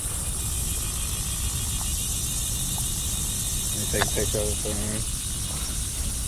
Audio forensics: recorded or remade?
recorded